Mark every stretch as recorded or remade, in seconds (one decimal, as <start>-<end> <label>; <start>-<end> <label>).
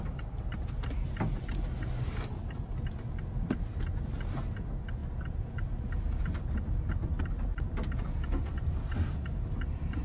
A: 0.0-10.0 recorded